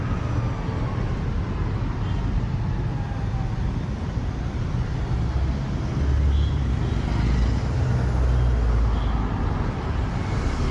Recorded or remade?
recorded